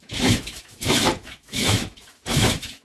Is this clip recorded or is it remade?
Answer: remade